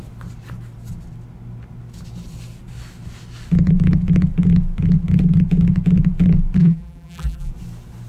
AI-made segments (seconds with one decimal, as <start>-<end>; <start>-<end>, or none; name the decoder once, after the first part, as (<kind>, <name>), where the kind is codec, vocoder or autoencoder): 6.6-7.5 (vocoder, BigVGAN v2)